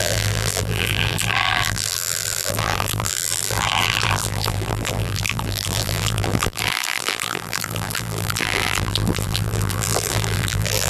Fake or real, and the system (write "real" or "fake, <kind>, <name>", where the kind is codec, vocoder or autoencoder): fake, vocoder, BigVGAN v2